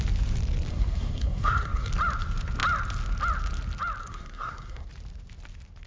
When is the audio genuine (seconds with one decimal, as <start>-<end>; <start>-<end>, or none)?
0.0-0.7; 1.9-4.0; 4.9-5.9